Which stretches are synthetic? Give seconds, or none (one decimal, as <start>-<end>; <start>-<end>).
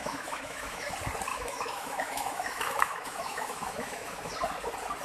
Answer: 0.0-0.9; 1.3-4.3